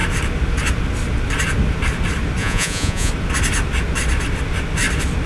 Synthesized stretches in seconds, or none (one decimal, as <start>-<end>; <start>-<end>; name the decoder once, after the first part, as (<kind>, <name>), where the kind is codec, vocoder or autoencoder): 2.4-3.1 (vocoder, Vocos)